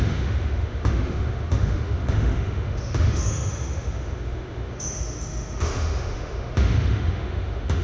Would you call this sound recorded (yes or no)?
no